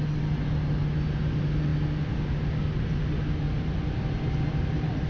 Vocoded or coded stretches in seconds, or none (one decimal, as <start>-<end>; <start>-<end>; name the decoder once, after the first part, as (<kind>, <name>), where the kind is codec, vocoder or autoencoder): none